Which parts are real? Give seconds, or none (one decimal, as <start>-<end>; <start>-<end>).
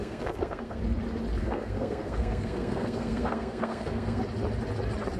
0.8-1.4; 4.2-5.2